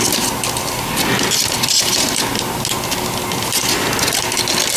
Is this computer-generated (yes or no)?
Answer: no